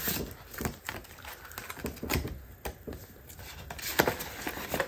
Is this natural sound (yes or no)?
yes